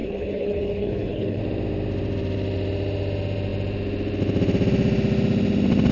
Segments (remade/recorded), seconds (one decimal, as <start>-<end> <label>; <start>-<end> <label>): 0.0-1.4 remade; 1.4-5.9 recorded